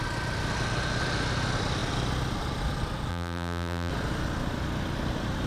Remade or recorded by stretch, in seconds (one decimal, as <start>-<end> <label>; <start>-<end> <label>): 0.0-3.1 recorded; 3.1-3.9 remade; 3.9-5.5 recorded